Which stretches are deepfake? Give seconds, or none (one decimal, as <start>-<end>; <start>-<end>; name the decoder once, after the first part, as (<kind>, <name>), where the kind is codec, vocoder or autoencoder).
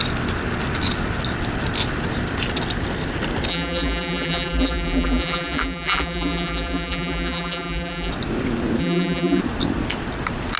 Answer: 3.5-8.1 (vocoder, BigVGAN v2); 8.8-9.4